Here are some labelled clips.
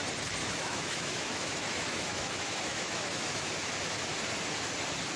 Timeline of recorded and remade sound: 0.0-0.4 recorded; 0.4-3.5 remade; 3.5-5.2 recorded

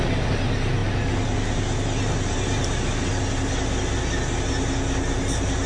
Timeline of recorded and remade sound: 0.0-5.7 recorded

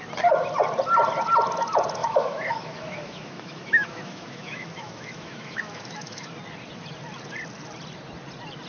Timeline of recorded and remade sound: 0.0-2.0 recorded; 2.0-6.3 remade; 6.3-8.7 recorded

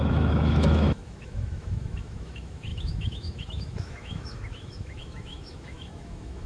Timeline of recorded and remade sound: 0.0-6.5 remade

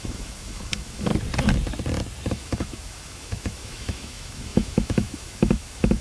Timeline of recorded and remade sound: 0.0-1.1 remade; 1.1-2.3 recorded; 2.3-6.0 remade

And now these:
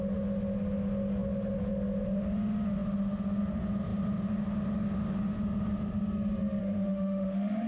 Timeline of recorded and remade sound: 0.0-6.6 recorded; 6.6-7.7 remade

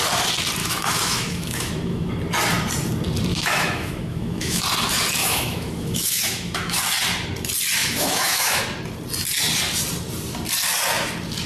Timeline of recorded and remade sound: 0.0-0.6 recorded; 0.6-2.1 remade; 2.1-3.3 recorded; 3.3-4.6 remade; 4.6-5.2 recorded; 5.2-6.8 remade; 6.8-7.8 recorded; 7.8-8.6 remade; 8.6-11.5 recorded